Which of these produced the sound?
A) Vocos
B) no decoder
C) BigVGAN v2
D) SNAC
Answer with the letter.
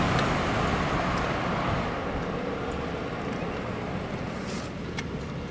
B